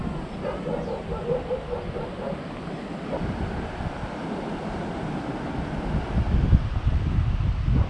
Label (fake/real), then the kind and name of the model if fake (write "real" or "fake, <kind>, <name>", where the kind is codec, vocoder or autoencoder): real